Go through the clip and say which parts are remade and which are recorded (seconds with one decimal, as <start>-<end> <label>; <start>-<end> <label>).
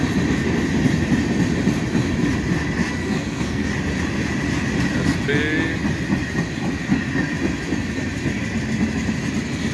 0.0-3.0 recorded; 3.0-3.7 remade; 3.7-9.7 recorded